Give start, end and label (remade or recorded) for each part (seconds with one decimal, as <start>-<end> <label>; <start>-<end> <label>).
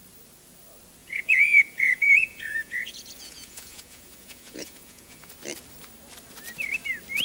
0.0-1.0 recorded; 1.0-5.3 remade; 5.3-7.2 recorded